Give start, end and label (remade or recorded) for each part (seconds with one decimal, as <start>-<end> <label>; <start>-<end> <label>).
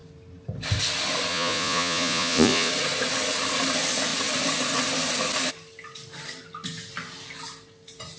0.0-1.3 recorded; 1.3-2.7 remade; 2.7-8.2 recorded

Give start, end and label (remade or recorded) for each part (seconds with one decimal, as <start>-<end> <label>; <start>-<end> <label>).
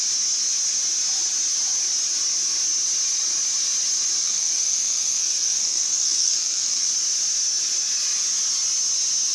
0.0-4.2 recorded; 4.2-6.9 remade; 6.9-9.3 recorded